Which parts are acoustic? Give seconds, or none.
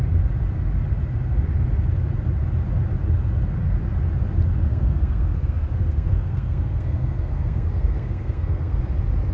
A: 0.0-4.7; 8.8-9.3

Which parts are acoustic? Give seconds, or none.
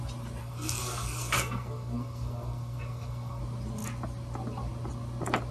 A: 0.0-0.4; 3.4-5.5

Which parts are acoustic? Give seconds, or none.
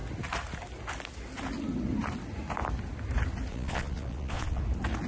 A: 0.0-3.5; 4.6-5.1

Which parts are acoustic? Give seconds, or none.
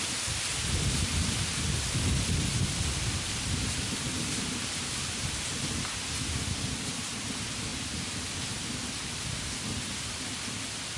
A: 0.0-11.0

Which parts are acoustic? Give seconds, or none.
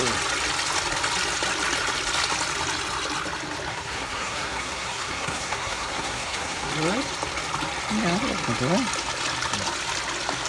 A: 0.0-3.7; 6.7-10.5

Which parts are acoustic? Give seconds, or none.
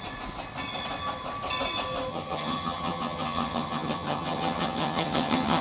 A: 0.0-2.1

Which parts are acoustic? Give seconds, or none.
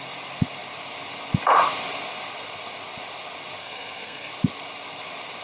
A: 0.0-3.6; 4.3-5.4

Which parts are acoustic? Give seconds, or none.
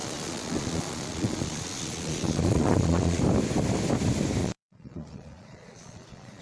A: 3.2-4.4